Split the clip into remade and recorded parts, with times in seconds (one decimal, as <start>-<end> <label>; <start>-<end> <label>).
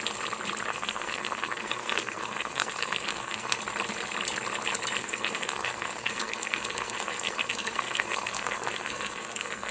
0.0-0.7 recorded; 0.7-3.6 remade; 3.6-5.0 recorded; 5.0-9.7 remade